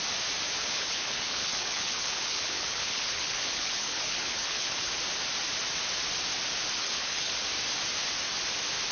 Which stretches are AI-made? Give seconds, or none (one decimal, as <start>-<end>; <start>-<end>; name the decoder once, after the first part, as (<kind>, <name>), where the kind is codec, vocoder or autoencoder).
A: 0.6-4.9 (codec, HILCodec); 6.8-7.3